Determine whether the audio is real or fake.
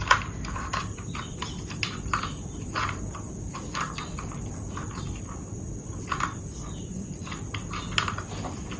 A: fake